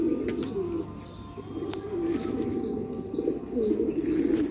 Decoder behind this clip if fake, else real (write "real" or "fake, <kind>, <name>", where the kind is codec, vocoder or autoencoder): real